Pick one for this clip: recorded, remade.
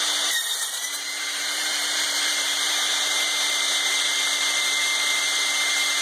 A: remade